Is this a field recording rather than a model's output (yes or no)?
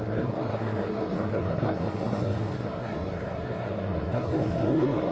no